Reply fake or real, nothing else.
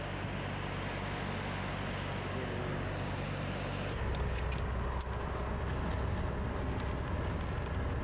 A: real